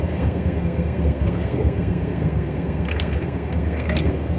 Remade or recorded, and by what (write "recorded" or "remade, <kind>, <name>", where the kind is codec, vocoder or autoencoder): remade, codec, SNAC